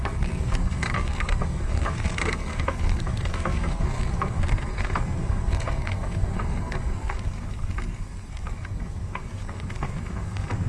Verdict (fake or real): fake